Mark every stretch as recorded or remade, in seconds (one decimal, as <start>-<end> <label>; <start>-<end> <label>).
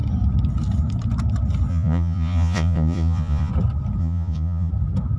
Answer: 0.0-1.7 recorded; 1.7-3.5 remade; 3.5-4.0 recorded; 4.0-4.7 remade; 4.7-5.2 recorded